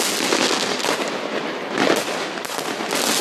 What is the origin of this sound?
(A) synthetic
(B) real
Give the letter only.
B